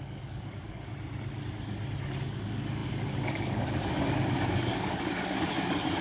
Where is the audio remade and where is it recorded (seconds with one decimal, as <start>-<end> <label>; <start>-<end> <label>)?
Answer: 0.0-0.9 remade; 0.9-2.0 recorded; 2.0-6.0 remade

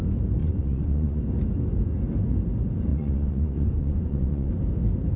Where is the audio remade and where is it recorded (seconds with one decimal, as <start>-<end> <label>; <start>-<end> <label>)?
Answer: 0.0-0.4 recorded; 0.4-1.2 remade; 1.2-2.9 recorded; 2.9-4.5 remade; 4.5-5.2 recorded

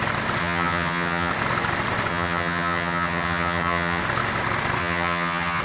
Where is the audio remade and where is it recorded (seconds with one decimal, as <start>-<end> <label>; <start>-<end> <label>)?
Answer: 0.0-0.4 recorded; 0.4-1.3 remade; 1.3-2.1 recorded; 2.1-4.0 remade; 4.0-4.8 recorded; 4.8-5.6 remade